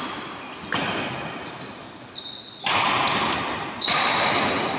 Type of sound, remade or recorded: recorded